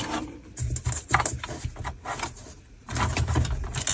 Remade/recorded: recorded